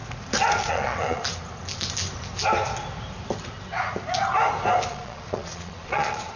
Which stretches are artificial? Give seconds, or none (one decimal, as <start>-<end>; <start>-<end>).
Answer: 0.7-1.2; 4.9-6.4